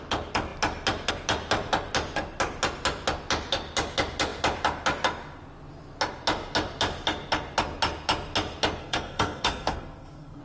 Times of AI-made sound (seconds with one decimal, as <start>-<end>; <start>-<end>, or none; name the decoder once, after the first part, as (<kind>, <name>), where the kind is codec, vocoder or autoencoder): 8.8-10.4 (codec, SNAC)